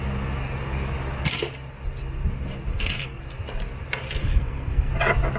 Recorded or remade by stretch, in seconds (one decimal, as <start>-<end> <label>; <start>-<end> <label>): 0.0-2.7 recorded; 2.7-3.2 remade; 3.2-4.2 recorded; 4.2-4.9 remade; 4.9-5.4 recorded